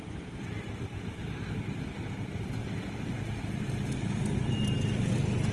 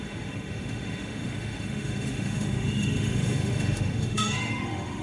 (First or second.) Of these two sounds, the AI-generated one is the second